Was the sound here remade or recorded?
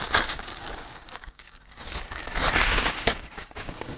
remade